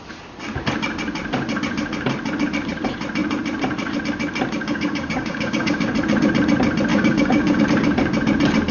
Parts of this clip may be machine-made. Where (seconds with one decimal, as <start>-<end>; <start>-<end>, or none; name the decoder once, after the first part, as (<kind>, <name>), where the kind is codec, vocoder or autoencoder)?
4.6-5.9 (codec, DAC); 6.9-7.6